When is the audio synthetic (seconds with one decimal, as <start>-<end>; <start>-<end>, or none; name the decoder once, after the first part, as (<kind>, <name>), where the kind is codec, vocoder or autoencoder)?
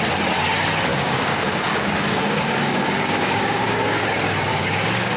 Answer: 0.9-4.0 (codec, DAC); 4.5-5.2